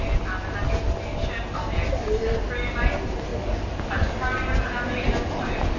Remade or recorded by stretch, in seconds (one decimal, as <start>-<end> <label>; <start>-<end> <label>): 0.0-5.8 recorded